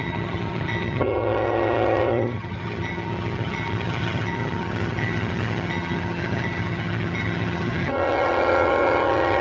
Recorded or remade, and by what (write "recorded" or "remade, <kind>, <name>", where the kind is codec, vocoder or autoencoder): remade, vocoder, HiFi-GAN